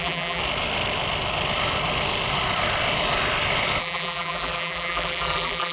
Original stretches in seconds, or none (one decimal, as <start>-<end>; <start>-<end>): 0.4-3.8